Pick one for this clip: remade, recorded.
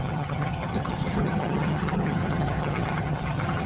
remade